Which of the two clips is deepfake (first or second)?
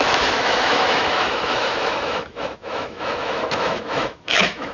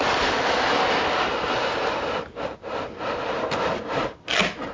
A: first